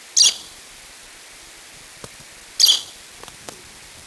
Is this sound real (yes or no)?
yes